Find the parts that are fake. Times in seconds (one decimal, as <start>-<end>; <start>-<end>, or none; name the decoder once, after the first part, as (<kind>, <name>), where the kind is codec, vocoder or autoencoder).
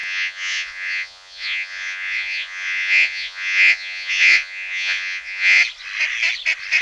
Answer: 0.0-5.6 (vocoder, Vocos)